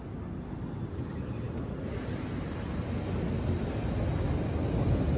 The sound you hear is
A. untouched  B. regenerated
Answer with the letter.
A